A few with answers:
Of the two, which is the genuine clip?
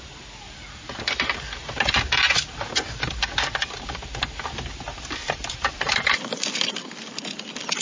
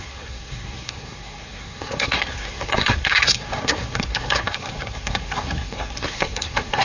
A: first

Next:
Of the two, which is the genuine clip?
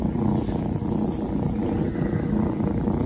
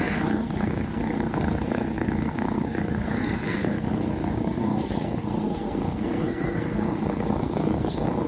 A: first